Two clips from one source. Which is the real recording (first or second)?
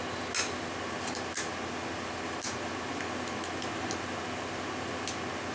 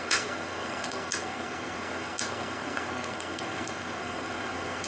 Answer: first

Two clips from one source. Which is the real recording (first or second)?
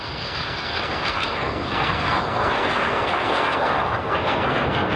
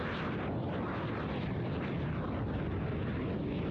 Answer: second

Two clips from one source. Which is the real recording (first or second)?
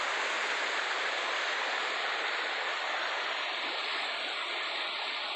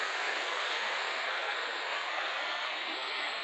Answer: first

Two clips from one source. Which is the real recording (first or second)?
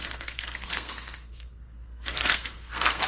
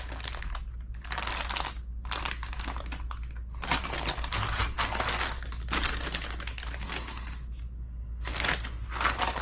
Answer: second